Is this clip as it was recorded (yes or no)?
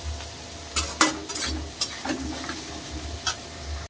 yes